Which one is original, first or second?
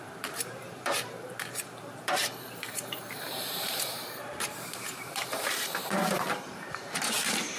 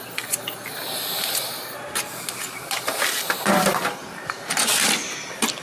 second